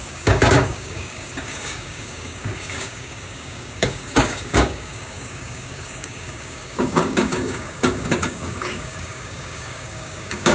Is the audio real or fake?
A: fake